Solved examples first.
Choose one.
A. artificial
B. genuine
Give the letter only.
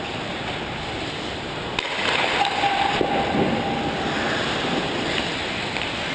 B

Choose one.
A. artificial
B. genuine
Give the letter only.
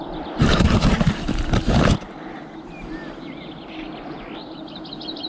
B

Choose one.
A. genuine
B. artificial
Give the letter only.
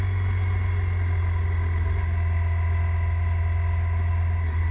A